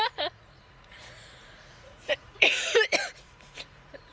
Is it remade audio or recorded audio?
remade